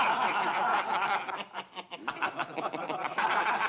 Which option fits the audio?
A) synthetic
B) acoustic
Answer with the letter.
B